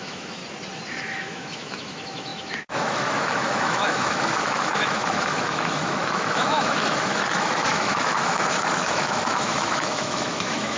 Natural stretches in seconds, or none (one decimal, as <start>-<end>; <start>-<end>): 0.4-1.0